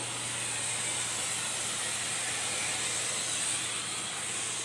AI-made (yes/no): no